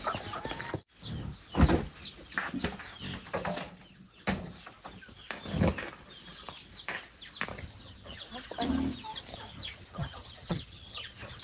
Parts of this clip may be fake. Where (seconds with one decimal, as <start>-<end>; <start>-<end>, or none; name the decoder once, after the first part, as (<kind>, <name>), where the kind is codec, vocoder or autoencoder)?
7.5-8.2 (vocoder, HiFi-GAN); 9.3-11.4